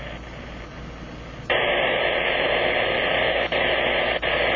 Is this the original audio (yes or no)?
yes